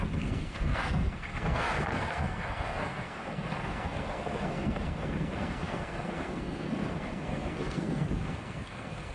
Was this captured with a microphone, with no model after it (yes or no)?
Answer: no